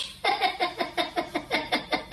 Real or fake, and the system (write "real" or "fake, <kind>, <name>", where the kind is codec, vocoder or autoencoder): real